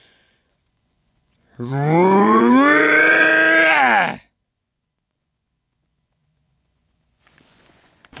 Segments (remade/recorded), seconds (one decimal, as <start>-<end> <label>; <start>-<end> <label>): 0.0-3.3 remade; 3.3-4.5 recorded; 4.5-8.2 remade